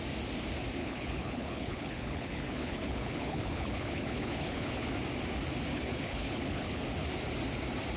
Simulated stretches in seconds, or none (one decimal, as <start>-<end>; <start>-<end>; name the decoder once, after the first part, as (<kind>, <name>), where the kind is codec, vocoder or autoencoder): 0.8-4.9 (codec, HILCodec); 5.7-6.8